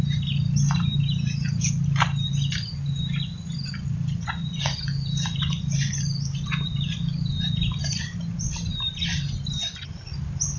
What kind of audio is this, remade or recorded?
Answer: recorded